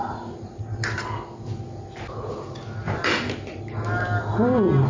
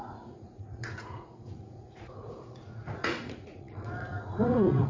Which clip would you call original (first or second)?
first